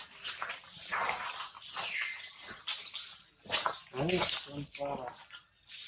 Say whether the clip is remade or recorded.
recorded